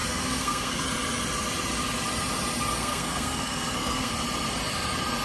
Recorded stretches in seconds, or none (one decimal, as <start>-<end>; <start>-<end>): 0.8-2.8; 4.1-5.2